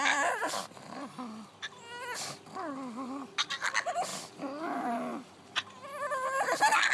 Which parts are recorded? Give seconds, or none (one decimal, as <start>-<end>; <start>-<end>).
0.0-4.1